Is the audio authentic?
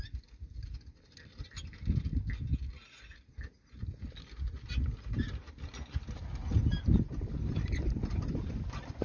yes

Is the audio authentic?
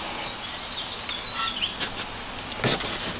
yes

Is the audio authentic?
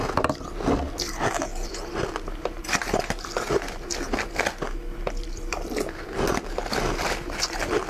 yes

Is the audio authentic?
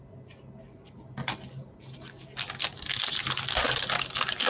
yes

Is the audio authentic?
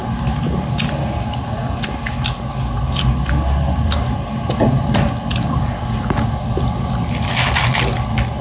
yes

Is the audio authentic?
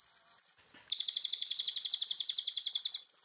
no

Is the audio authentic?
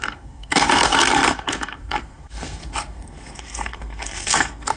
no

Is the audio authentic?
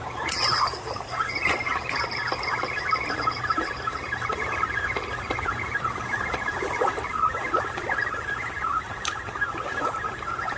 yes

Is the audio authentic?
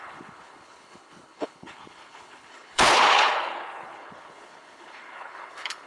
no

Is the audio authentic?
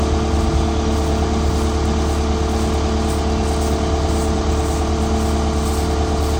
yes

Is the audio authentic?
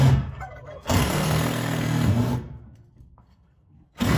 no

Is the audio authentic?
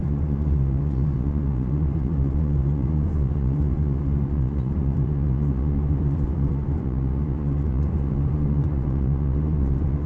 no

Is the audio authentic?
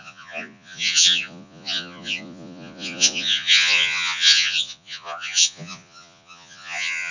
no